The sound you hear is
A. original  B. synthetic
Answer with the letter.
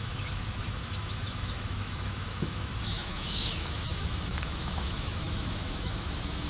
B